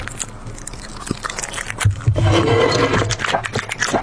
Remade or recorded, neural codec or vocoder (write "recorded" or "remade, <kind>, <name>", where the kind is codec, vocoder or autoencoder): recorded